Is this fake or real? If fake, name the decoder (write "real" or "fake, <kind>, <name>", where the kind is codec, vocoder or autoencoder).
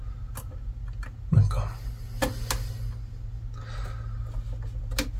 real